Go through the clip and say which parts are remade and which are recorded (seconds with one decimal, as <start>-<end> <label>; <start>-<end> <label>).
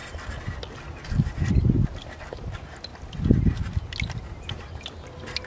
0.0-5.5 recorded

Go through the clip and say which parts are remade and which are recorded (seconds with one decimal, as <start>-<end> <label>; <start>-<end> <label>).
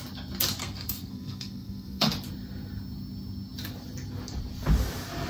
0.0-0.6 recorded; 0.6-2.1 remade; 2.1-5.3 recorded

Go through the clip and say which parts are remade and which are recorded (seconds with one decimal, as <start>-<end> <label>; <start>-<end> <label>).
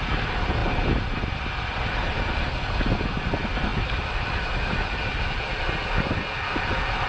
0.0-7.1 recorded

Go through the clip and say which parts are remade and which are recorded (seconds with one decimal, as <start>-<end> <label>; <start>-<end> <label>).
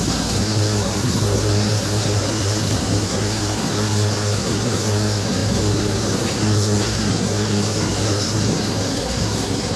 0.0-9.8 remade